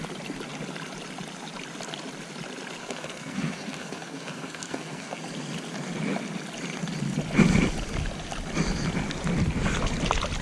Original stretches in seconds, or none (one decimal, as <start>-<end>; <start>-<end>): 0.0-2.8; 5.2-10.4